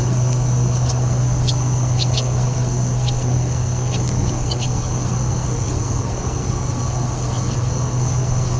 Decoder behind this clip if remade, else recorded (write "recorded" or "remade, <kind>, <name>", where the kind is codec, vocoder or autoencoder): remade, codec, SNAC